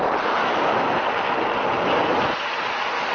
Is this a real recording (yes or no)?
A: yes